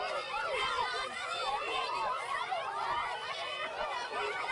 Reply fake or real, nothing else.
fake